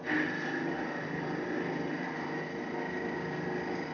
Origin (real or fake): real